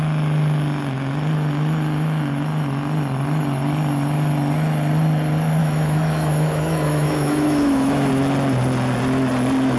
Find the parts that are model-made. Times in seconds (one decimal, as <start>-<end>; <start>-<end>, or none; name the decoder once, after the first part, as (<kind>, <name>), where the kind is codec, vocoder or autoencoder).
5.6-8.1 (autoencoder, DAC-VAE)